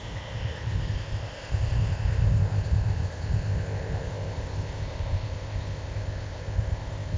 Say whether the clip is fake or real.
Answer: fake